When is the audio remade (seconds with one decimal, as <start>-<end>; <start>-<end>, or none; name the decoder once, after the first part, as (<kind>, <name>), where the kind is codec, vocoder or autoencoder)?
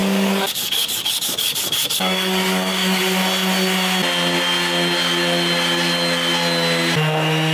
0.0-3.0 (codec, DAC)